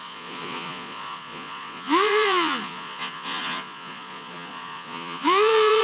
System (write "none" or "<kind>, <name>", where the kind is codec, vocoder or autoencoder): vocoder, Vocos